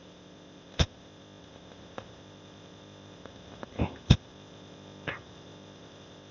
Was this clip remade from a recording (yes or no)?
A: yes